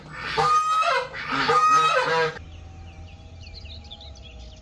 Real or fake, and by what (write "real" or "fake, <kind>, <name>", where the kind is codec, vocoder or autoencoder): real